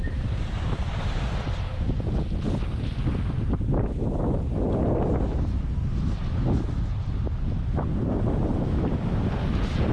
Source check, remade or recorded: recorded